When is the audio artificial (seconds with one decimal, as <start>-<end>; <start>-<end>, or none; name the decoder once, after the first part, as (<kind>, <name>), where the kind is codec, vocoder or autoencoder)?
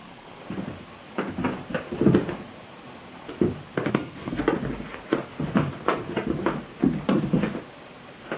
0.0-0.4 (codec, SNAC); 3.9-4.4